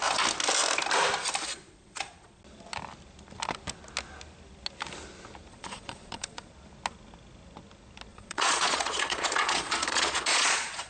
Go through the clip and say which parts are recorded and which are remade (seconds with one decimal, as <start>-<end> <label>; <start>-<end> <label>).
0.0-1.5 recorded; 1.5-2.4 remade; 2.4-5.5 recorded; 5.5-6.5 remade; 6.5-8.1 recorded; 8.1-10.9 remade